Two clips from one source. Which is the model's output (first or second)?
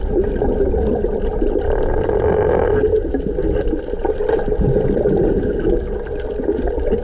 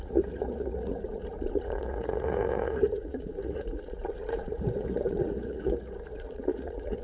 second